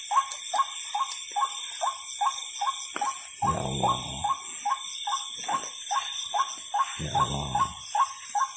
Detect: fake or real real